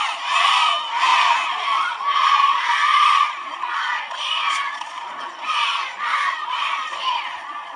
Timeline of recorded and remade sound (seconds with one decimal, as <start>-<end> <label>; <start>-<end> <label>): 0.0-7.8 remade